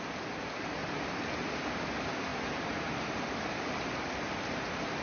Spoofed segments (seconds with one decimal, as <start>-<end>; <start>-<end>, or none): 0.8-1.6; 2.3-3.7